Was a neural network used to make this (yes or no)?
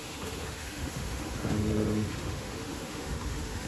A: yes